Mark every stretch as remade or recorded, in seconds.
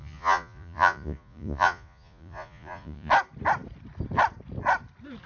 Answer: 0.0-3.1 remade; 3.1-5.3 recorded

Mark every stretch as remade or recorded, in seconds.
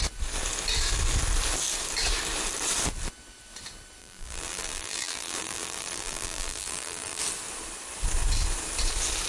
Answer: 0.0-4.0 recorded; 4.0-7.2 remade; 7.2-9.3 recorded